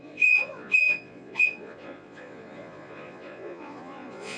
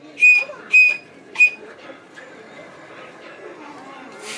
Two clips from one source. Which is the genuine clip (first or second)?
second